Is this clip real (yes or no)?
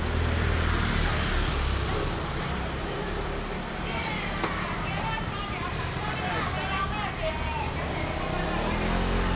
yes